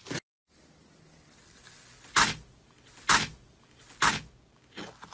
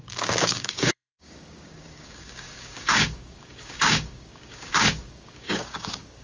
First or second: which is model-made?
second